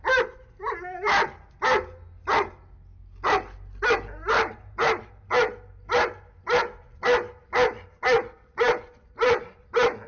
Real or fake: real